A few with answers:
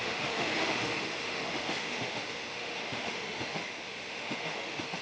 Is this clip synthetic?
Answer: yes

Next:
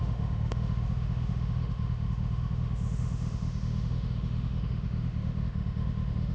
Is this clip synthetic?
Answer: yes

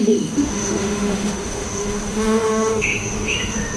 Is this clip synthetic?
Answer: yes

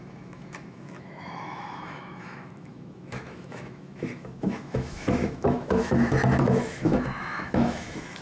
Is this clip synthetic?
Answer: yes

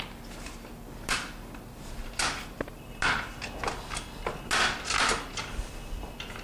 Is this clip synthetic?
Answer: no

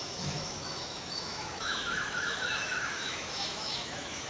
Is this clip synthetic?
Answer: yes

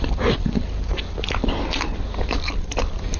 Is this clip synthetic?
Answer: no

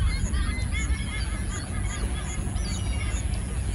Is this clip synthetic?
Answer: no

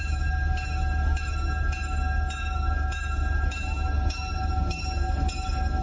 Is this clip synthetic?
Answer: yes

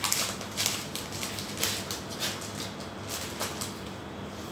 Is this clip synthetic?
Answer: no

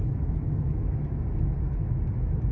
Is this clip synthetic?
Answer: yes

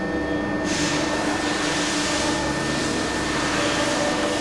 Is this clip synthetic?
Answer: no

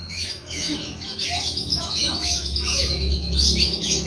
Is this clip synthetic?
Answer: yes